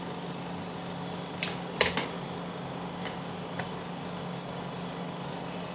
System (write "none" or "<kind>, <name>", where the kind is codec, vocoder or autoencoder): none